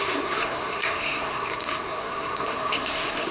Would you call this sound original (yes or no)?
no